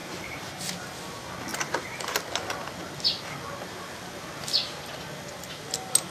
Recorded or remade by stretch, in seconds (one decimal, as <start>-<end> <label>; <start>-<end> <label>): 0.0-0.5 remade; 0.5-1.5 recorded; 1.5-2.2 remade; 2.2-6.1 recorded